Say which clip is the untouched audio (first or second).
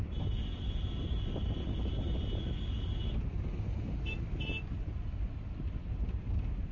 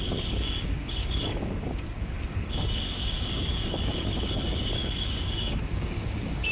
first